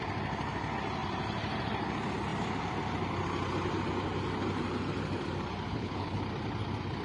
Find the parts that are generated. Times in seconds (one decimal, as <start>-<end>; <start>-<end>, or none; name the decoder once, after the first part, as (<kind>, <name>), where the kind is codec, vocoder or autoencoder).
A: 5.7-6.2 (codec, HILCodec)